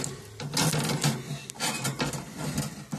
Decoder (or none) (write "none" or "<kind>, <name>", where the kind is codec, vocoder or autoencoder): none